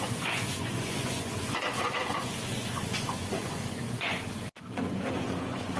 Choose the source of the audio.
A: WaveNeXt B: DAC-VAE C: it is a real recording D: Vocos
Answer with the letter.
D